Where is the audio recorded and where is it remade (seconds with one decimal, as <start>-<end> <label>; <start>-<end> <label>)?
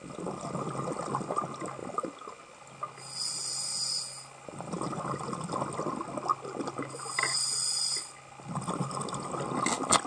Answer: 0.0-10.1 recorded